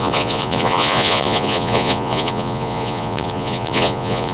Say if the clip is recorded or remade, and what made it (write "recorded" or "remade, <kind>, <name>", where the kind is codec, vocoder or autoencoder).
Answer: remade, vocoder, Vocos